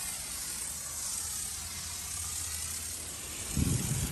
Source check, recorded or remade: recorded